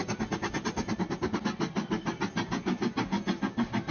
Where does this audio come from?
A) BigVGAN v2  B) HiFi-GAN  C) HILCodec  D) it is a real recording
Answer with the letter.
D